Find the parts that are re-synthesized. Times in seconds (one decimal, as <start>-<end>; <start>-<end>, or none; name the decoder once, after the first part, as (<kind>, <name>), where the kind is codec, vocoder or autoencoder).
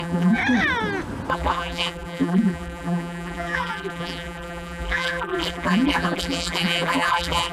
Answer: 0.0-0.4 (vocoder, BigVGAN v2); 1.3-7.5